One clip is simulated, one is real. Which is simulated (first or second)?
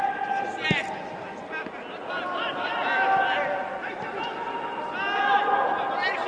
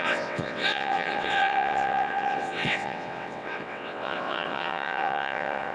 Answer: second